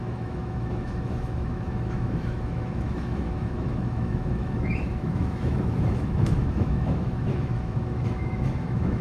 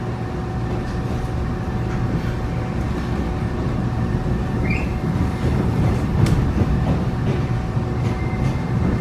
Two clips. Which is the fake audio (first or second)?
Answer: first